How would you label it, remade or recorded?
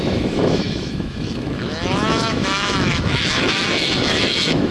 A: remade